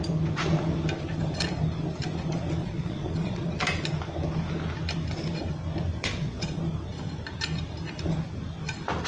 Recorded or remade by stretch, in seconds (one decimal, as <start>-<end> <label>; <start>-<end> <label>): 0.0-2.6 recorded; 2.6-3.5 remade; 3.5-6.0 recorded; 6.0-6.6 remade; 6.6-9.1 recorded